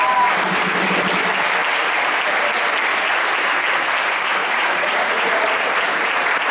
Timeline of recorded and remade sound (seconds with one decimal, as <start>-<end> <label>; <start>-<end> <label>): 0.0-4.4 recorded; 4.4-5.5 remade; 5.5-6.5 recorded